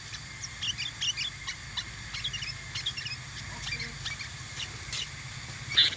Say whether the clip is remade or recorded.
recorded